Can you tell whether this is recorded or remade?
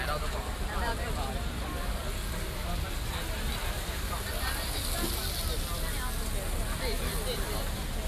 recorded